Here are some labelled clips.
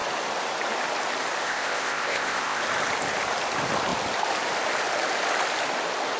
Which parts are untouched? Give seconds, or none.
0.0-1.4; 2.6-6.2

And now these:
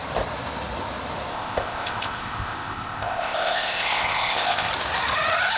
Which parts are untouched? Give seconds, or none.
0.0-1.3; 4.7-5.6